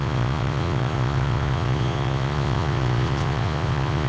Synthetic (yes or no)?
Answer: yes